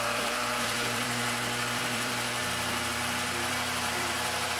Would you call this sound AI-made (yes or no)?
yes